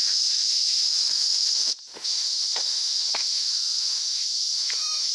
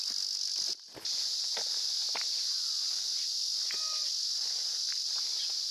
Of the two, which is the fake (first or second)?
first